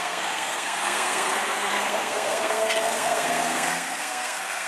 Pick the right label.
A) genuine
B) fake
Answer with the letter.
B